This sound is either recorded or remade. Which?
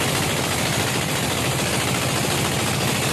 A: recorded